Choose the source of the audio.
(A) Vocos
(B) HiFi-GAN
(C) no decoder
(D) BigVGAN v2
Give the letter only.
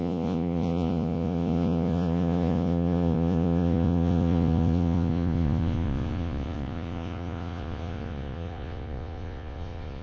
A